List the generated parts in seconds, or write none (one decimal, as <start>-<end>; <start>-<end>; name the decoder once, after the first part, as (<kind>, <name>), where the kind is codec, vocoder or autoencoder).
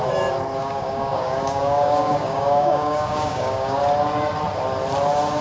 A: 0.6-3.8 (codec, DAC)